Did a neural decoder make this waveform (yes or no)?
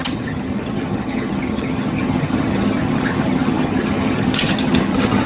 yes